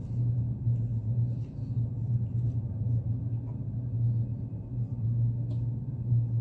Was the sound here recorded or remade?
recorded